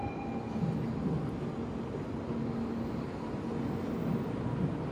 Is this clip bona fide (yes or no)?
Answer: yes